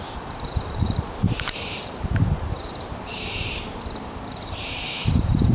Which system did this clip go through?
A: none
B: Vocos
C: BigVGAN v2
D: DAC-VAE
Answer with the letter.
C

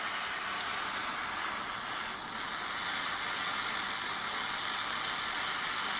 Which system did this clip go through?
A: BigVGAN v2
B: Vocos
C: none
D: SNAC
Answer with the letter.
C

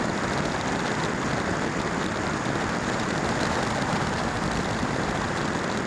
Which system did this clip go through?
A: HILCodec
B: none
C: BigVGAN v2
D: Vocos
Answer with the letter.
C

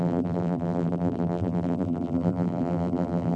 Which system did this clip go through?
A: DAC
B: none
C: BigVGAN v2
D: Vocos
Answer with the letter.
C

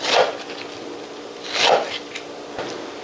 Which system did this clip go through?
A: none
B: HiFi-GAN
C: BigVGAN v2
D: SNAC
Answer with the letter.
A